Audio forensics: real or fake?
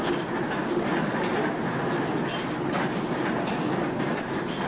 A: real